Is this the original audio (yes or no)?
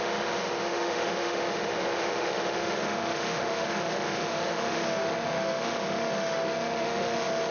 no